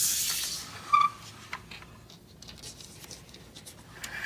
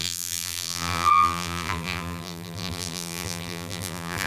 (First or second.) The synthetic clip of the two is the second